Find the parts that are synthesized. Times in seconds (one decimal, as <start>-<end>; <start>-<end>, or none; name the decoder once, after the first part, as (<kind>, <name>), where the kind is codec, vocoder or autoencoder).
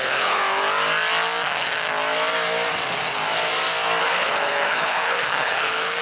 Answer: 0.0-0.4 (codec, HILCodec); 4.0-6.0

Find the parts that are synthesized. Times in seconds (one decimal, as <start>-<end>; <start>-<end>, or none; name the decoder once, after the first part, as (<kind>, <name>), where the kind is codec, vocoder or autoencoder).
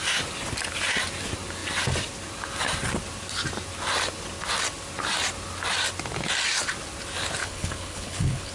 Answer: 7.4-8.5 (codec, HILCodec)